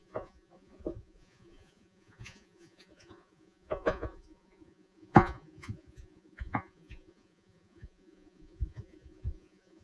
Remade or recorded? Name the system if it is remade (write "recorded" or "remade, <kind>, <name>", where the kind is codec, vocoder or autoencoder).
remade, vocoder, Vocos